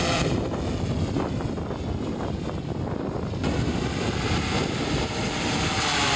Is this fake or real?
real